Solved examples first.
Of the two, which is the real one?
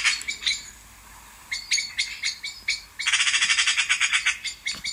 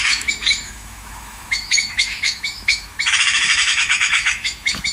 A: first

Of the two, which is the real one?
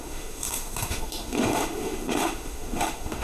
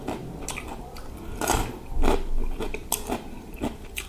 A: second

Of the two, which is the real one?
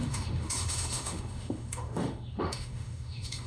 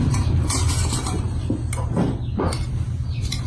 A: second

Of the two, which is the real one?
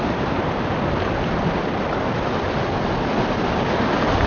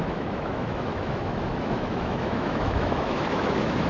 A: first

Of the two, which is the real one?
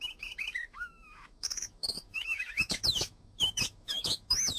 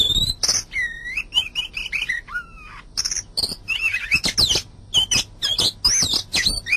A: second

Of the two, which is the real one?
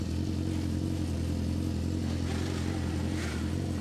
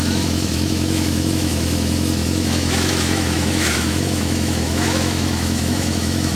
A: first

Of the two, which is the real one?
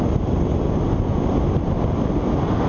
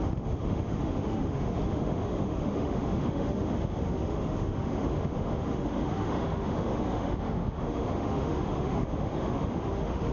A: first